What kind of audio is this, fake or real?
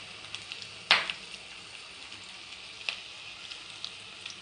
real